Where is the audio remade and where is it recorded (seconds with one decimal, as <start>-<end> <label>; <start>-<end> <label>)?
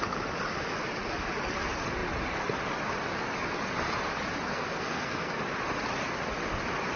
0.0-4.5 recorded; 4.5-5.4 remade; 5.4-7.0 recorded